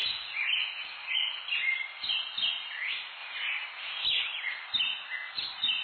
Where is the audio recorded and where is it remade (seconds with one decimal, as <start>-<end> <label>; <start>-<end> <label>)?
0.0-1.4 remade; 1.4-5.8 recorded

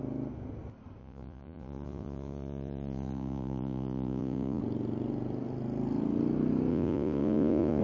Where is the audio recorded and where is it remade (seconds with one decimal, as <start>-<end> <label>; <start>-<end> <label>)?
0.0-1.0 recorded; 1.0-4.6 remade; 4.6-6.7 recorded; 6.7-7.8 remade

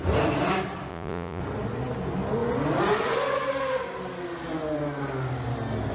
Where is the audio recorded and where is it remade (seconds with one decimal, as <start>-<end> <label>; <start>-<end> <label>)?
0.0-0.9 recorded; 0.9-1.4 remade; 1.4-5.9 recorded

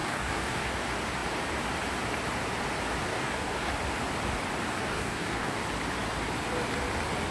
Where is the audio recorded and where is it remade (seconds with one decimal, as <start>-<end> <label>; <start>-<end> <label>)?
0.0-0.7 remade; 0.7-3.1 recorded; 3.1-3.7 remade; 3.7-4.8 recorded; 4.8-5.6 remade; 5.6-7.3 recorded

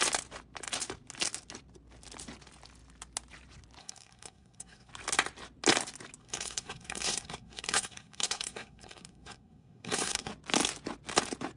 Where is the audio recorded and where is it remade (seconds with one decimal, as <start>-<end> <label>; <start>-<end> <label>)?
0.0-3.8 recorded; 3.8-4.9 remade; 4.9-6.2 recorded; 6.2-10.3 remade; 10.3-11.6 recorded

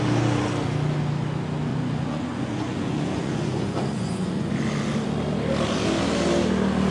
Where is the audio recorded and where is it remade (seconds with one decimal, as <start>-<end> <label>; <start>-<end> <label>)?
0.0-1.7 recorded; 1.7-4.5 remade; 4.5-6.9 recorded

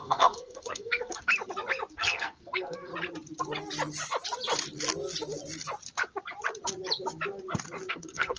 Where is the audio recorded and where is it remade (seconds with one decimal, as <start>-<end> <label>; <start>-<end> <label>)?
0.0-1.3 remade; 1.3-1.9 recorded; 1.9-2.9 remade; 2.9-7.9 recorded; 7.9-8.4 remade

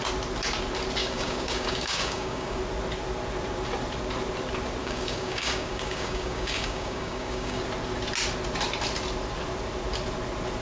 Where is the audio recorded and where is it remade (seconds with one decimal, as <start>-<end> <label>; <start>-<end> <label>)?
0.0-1.0 recorded; 1.0-2.6 remade; 2.6-4.8 recorded; 4.8-7.6 remade; 7.6-10.6 recorded